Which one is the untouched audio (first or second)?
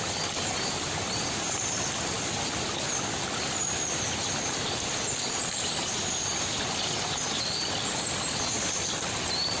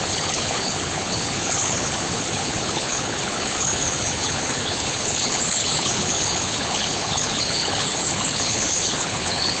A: first